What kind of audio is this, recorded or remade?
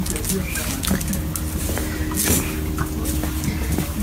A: recorded